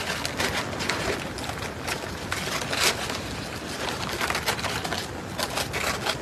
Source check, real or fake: real